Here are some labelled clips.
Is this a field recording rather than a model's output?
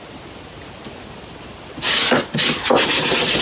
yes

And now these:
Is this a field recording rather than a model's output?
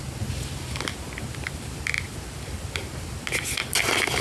yes